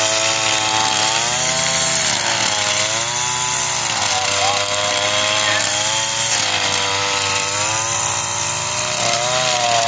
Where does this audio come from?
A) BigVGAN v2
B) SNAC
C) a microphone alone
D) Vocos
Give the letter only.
C